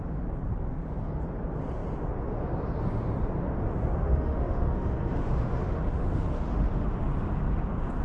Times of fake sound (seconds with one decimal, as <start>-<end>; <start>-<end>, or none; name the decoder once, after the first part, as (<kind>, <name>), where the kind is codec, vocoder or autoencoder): 4.0-7.0 (autoencoder, DAC-VAE)